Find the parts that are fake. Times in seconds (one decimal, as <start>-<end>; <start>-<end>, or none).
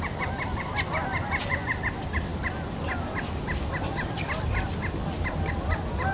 none